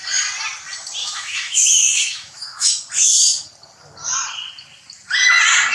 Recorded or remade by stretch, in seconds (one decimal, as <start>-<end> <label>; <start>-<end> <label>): 0.0-1.0 recorded; 1.0-2.7 remade; 2.7-5.7 recorded